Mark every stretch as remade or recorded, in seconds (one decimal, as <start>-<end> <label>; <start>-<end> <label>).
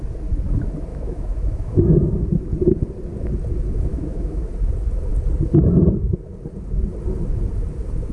0.0-0.9 recorded; 0.9-2.1 remade; 2.1-3.9 recorded; 3.9-4.5 remade; 4.5-8.1 recorded